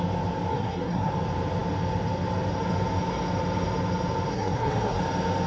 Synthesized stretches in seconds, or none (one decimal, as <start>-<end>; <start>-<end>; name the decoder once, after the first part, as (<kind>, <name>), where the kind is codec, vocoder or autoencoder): 0.5-1.1 (codec, SNAC); 4.3-5.0